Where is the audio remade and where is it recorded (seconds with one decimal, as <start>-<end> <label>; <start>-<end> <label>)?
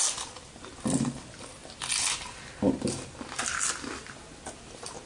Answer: 0.0-5.1 recorded